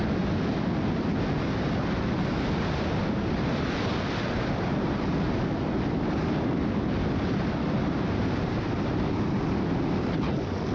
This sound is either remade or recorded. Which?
recorded